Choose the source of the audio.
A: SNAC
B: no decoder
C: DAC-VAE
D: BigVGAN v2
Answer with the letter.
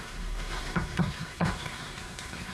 A